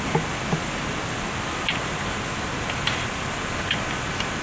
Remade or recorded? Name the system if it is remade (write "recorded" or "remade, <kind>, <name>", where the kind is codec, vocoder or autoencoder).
recorded